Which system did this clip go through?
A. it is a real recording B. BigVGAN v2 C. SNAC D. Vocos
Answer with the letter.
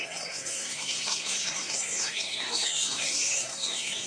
C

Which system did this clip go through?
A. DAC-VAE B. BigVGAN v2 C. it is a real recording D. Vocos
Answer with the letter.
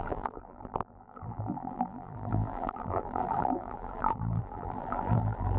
B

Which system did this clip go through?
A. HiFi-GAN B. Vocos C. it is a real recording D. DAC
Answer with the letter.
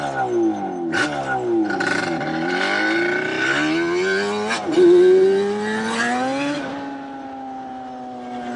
C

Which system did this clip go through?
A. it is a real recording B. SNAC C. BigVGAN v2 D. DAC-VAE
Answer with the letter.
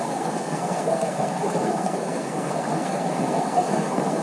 B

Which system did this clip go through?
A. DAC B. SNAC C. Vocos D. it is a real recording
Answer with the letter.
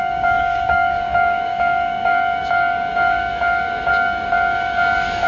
A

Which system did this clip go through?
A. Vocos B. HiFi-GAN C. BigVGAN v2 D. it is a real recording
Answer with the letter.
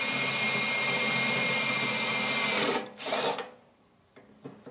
D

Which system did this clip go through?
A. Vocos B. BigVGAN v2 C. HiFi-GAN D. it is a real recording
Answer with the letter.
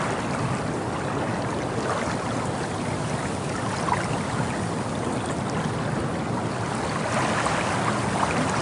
D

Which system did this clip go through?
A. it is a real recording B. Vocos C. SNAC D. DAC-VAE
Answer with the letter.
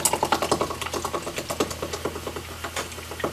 A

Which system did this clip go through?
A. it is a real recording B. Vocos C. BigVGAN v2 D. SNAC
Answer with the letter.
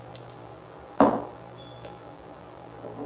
C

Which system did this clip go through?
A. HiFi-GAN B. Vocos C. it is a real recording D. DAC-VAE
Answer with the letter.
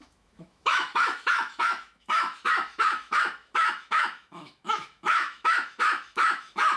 D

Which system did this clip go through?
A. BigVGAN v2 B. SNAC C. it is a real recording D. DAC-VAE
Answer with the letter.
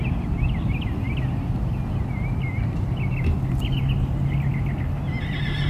C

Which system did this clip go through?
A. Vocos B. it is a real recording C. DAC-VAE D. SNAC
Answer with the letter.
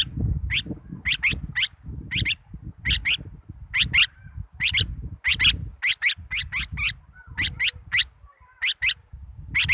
B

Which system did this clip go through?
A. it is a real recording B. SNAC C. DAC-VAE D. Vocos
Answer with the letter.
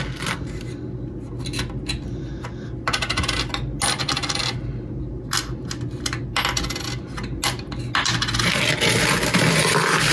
A